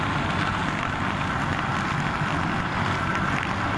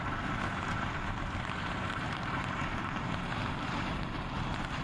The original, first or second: first